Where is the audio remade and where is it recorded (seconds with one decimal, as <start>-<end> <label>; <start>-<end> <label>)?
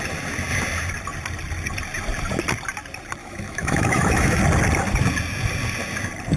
0.0-3.2 recorded; 3.2-4.4 remade; 4.4-6.4 recorded